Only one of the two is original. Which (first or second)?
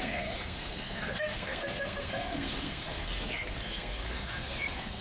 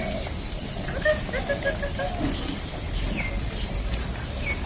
second